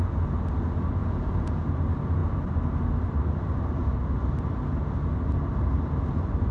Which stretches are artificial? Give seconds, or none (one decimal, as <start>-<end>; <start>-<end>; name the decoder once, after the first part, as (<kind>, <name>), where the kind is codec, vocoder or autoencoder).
1.0-1.7 (vocoder, Vocos)